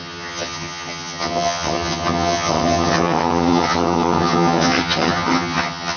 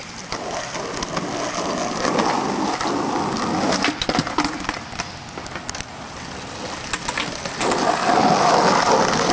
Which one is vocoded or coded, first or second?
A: first